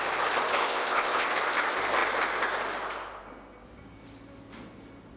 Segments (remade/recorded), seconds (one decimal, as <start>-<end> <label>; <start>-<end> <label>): 0.0-0.6 recorded; 0.6-1.3 remade; 1.3-5.2 recorded